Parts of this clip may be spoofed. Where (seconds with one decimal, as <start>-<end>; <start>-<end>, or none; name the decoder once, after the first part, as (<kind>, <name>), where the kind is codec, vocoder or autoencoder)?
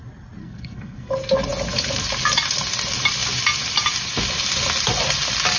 0.4-1.1 (codec, SNAC)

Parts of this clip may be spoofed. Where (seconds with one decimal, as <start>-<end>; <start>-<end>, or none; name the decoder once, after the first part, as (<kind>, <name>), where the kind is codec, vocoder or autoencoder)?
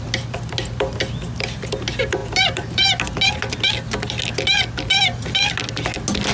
none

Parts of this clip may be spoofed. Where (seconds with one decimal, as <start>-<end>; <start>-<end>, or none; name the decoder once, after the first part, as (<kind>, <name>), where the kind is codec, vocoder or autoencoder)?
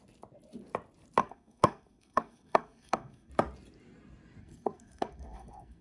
1.2-3.3 (codec, SNAC); 4.4-5.8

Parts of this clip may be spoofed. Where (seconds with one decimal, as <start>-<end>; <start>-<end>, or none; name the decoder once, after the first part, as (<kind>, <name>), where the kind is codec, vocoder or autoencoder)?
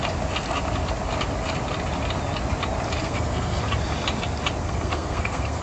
3.0-3.6 (codec, SNAC); 4.6-5.6